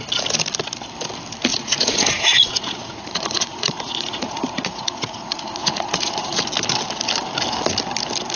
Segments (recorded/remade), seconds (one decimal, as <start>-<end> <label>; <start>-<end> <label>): 0.0-1.5 recorded; 1.5-6.4 remade; 6.4-8.4 recorded